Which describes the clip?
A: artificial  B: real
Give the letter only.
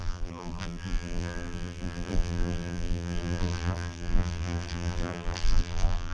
A